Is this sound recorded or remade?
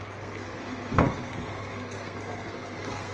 remade